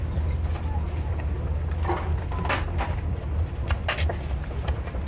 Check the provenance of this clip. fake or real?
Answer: real